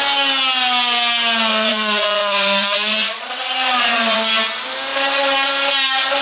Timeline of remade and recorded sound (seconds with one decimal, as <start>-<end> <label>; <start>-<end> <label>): 0.0-1.5 recorded; 1.5-4.3 remade; 4.3-6.2 recorded